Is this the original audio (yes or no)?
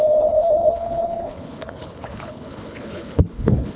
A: no